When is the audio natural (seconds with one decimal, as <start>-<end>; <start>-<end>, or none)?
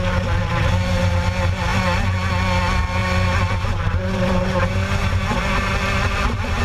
0.0-3.0